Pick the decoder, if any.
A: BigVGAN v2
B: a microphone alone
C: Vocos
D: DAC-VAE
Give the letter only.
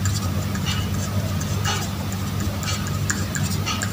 B